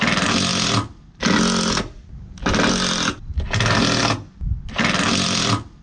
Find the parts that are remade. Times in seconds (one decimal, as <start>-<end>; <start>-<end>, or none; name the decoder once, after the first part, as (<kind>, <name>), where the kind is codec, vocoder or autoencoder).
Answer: none